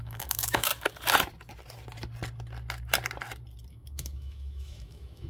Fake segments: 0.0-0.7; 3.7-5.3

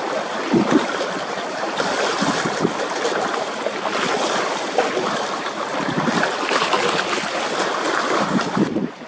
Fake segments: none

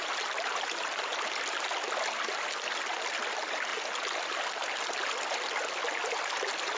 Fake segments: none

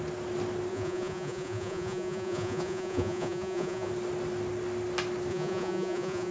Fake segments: 0.7-3.9; 5.3-6.3